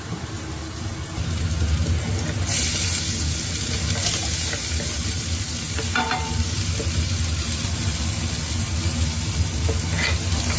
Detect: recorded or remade recorded